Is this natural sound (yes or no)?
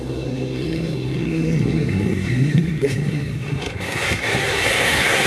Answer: no